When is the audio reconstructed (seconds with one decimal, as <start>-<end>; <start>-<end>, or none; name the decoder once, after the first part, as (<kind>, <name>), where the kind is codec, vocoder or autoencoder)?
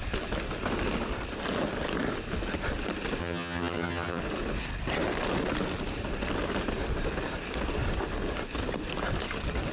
3.2-4.2 (vocoder, HiFi-GAN)